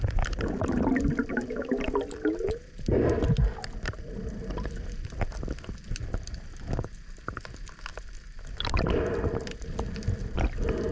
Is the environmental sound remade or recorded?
recorded